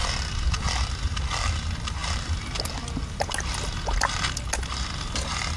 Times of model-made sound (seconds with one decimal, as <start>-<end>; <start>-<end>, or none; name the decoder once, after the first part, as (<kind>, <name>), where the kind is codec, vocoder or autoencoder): none